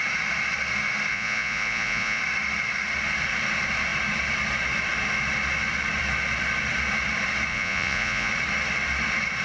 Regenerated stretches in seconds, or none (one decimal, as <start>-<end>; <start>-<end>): 1.1-2.2; 7.5-8.3